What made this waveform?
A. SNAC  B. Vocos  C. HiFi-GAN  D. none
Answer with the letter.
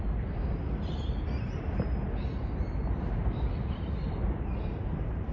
D